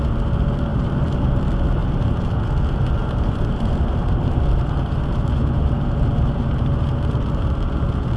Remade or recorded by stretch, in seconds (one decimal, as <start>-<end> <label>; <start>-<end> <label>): 0.0-0.7 recorded; 0.7-1.3 remade; 1.3-1.8 recorded; 1.8-2.5 remade; 2.5-3.0 recorded; 3.0-7.5 remade; 7.5-8.2 recorded